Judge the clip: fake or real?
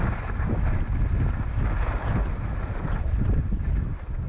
real